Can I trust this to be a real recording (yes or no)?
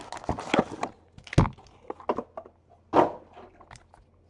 yes